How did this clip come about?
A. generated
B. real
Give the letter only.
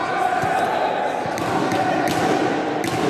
B